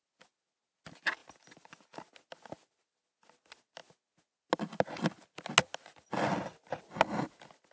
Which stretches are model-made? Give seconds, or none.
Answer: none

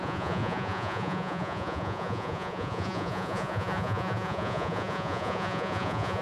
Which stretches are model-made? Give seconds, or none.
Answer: 0.0-6.2

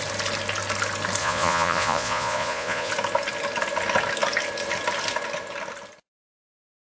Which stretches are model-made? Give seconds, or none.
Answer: 1.2-2.9

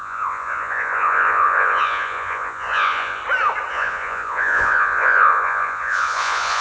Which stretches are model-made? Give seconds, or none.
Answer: 0.0-3.2; 3.7-6.6

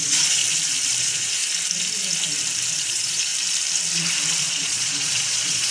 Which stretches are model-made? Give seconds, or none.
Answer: 0.0-0.4; 1.0-1.4; 2.8-3.3; 4.4-5.7

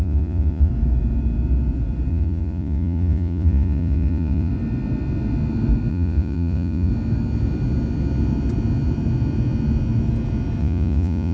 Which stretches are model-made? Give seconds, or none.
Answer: 0.0-0.7; 2.1-4.5; 5.9-6.9; 10.6-11.3